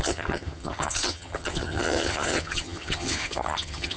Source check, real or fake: fake